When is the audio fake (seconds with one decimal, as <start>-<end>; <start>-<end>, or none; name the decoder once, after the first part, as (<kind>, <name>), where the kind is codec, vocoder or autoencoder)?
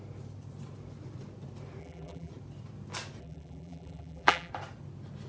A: 1.8-2.3 (vocoder, BigVGAN v2); 3.2-4.5